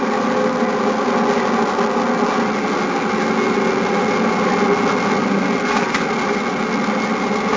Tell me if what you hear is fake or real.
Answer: real